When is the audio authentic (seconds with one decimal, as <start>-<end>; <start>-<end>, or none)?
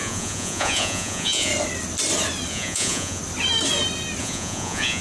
1.5-2.5; 3.2-4.2